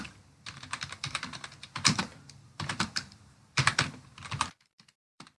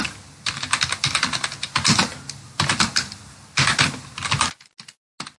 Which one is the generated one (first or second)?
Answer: first